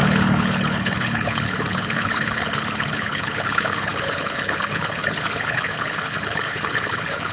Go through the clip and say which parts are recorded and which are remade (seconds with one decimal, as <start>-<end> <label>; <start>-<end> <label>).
0.0-7.3 remade